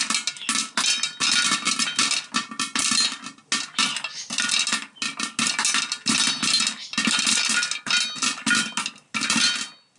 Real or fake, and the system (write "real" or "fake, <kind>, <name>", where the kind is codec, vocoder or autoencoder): real